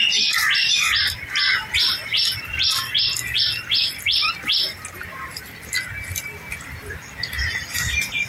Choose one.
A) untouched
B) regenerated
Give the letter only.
A